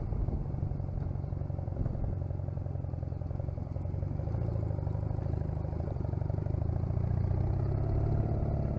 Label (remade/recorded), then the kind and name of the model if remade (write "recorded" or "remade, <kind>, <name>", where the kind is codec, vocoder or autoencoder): recorded